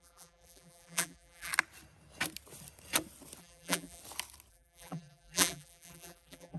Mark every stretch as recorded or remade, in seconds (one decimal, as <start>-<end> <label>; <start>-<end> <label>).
0.0-1.5 remade; 1.5-3.4 recorded; 3.4-4.0 remade; 4.0-4.5 recorded; 4.5-6.6 remade

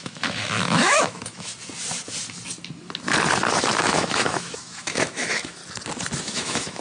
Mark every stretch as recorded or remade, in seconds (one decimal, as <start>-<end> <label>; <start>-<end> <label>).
0.0-1.5 remade; 1.5-3.6 recorded; 3.6-5.6 remade; 5.6-6.2 recorded; 6.2-6.8 remade

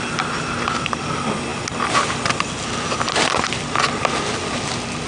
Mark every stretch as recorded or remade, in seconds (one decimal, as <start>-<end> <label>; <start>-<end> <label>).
0.0-5.1 recorded

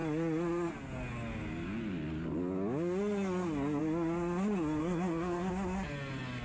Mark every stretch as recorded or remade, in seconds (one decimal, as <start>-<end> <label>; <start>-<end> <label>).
0.0-4.8 recorded; 4.8-5.5 remade; 5.5-6.4 recorded

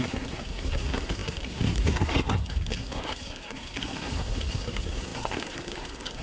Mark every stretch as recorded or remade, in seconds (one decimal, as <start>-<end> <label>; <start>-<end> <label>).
0.0-6.2 remade

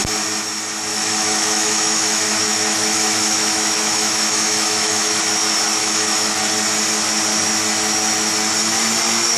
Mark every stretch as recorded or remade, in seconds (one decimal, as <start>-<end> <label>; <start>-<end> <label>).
0.0-0.9 recorded; 0.9-5.2 remade; 5.2-5.8 recorded; 5.8-6.4 remade; 6.4-9.4 recorded

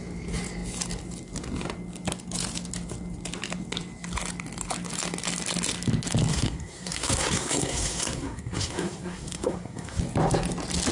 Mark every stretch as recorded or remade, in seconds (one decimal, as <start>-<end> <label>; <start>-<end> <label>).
0.0-6.3 recorded; 6.3-10.0 remade; 10.0-10.9 recorded